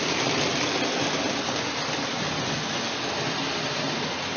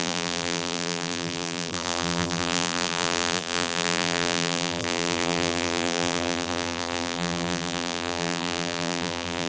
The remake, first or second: second